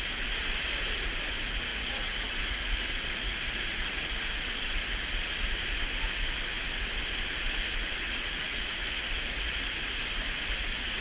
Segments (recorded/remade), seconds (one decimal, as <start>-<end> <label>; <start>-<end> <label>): 0.0-1.7 recorded; 1.7-4.8 remade; 4.8-7.8 recorded; 7.8-9.8 remade; 9.8-11.0 recorded